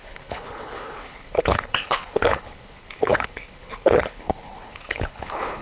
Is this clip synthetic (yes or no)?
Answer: yes